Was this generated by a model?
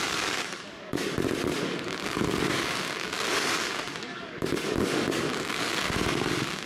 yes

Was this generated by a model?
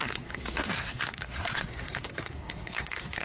yes